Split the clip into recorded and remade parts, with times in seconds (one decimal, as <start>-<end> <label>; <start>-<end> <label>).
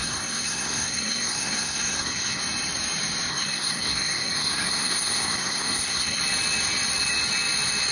0.0-2.4 remade; 2.4-3.3 recorded; 3.3-6.2 remade; 6.2-7.9 recorded